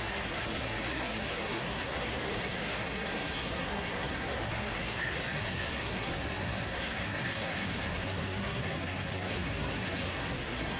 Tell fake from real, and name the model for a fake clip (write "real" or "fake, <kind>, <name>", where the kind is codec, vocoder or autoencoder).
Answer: fake, codec, SNAC